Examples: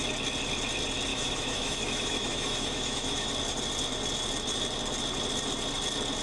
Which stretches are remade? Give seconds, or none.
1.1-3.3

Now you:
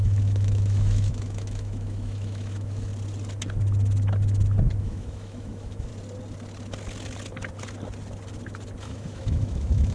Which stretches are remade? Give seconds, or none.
0.0-2.9; 4.8-5.9; 8.8-9.9

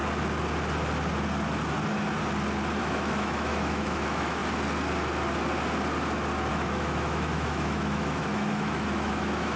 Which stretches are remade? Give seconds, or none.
2.8-4.4; 6.5-9.6

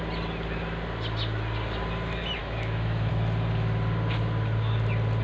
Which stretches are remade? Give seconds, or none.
2.4-3.1

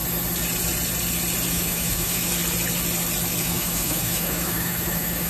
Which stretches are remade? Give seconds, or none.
1.5-2.3; 3.4-5.3

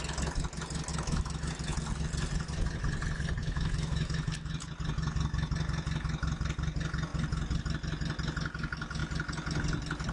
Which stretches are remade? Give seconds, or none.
0.9-1.5; 3.4-4.7